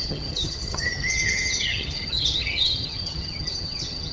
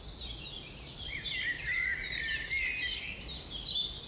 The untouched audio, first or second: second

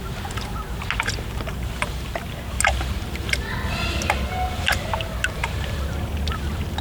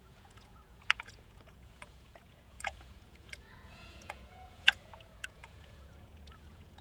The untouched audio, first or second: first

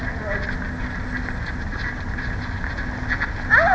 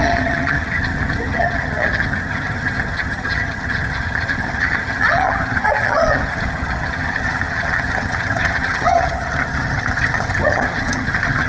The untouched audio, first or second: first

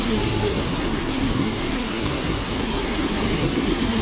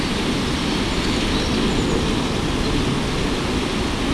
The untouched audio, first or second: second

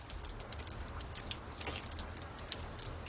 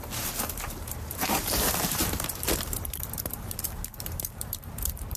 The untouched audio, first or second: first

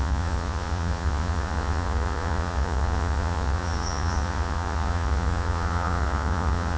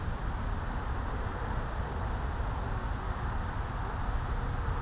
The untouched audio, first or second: second